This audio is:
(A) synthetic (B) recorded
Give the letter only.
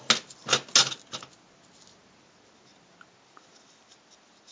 B